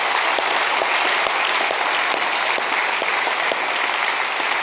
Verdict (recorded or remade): recorded